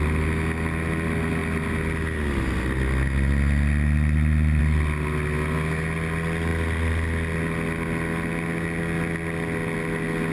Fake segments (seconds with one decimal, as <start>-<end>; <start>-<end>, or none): none